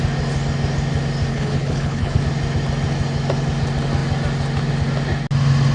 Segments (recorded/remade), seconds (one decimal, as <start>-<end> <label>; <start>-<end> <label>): 0.0-1.3 recorded; 1.3-2.2 remade; 2.2-5.7 recorded